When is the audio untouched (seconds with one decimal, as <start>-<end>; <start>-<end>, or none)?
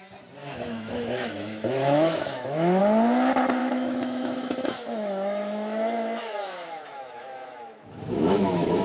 0.0-0.4; 2.8-3.6